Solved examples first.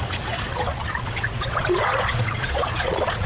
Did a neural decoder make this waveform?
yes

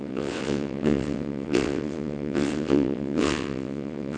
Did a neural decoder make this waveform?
yes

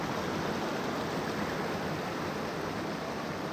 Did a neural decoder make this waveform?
no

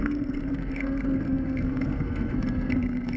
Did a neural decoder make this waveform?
yes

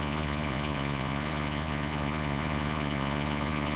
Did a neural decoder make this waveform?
yes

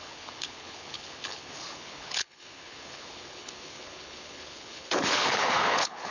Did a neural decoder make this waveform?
yes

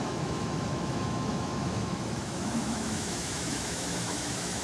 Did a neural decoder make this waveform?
yes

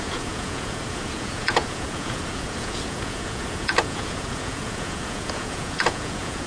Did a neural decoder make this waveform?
yes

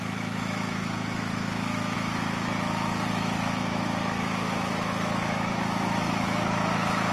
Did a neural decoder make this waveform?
yes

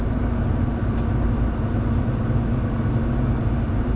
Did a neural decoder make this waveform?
no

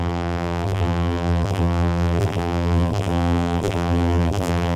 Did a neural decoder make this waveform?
yes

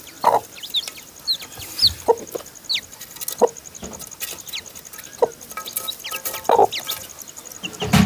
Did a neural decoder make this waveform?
no